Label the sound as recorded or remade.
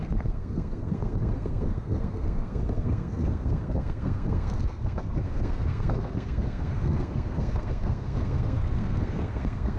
remade